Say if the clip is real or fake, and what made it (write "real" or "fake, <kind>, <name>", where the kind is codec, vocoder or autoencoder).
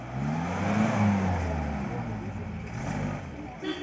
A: real